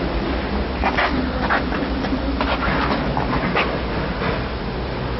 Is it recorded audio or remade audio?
recorded